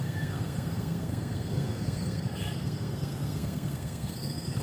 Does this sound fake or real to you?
fake